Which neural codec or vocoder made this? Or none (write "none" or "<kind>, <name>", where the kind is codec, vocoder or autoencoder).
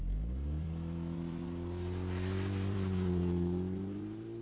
none